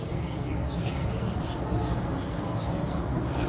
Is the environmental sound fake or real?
fake